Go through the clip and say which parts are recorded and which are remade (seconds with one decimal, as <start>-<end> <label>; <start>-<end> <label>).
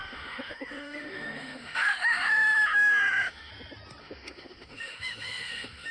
0.0-3.5 remade; 3.5-4.0 recorded; 4.0-5.9 remade